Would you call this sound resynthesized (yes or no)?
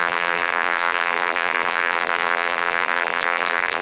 yes